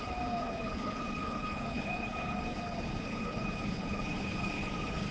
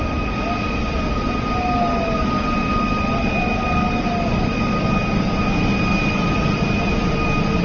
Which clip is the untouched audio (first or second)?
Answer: second